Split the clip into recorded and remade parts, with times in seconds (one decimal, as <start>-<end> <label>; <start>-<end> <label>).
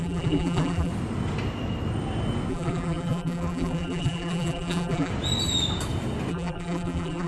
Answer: 0.0-0.9 remade; 0.9-2.5 recorded; 2.5-5.1 remade; 5.1-6.3 recorded; 6.3-7.3 remade